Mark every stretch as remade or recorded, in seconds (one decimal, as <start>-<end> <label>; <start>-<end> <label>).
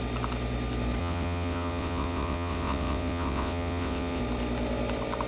0.0-1.0 recorded; 1.0-4.2 remade; 4.2-5.3 recorded